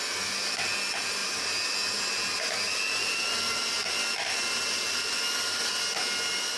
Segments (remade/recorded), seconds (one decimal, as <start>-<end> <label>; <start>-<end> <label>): 0.0-6.6 recorded